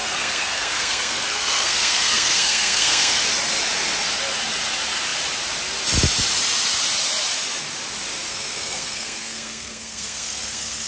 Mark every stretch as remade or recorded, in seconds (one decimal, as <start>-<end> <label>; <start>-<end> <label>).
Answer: 0.0-3.2 remade; 3.2-8.3 recorded; 8.3-10.9 remade